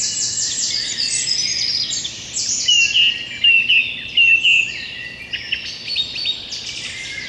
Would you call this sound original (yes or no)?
yes